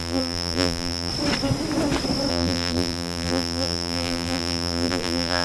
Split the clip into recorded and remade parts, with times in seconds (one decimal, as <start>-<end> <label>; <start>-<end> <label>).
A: 0.0-1.1 remade; 1.1-2.3 recorded; 2.3-5.4 remade